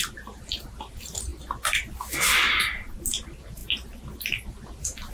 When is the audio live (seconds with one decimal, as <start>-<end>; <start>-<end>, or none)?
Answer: 1.3-2.6; 3.6-4.5